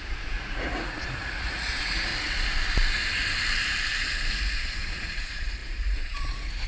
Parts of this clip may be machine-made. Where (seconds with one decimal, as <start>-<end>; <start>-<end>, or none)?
0.0-2.1; 4.3-6.7